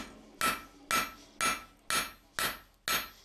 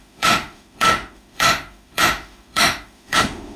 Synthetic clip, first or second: second